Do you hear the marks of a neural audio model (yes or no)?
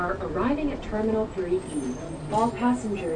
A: no